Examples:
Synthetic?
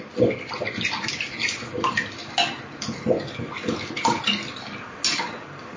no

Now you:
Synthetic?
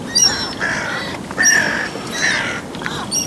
no